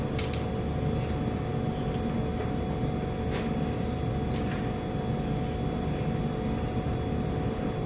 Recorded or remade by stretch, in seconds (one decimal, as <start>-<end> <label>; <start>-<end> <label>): 0.0-7.9 recorded